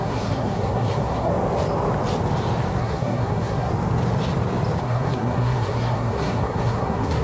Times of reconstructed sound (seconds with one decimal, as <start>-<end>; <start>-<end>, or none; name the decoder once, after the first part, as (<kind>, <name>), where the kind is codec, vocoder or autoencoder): 0.0-1.3 (codec, SNAC); 2.8-3.7; 4.8-7.2